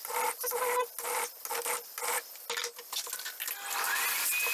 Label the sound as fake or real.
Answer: real